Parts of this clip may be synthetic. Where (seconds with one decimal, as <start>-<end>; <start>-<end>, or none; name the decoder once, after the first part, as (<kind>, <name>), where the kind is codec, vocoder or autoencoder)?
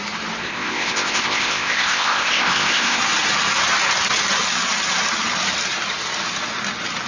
0.4-3.0 (codec, ZipCodec)